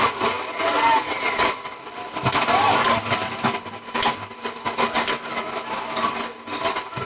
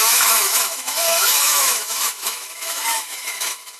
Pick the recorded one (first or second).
first